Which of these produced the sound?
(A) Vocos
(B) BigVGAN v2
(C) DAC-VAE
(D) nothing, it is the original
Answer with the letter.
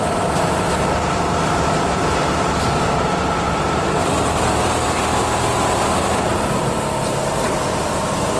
B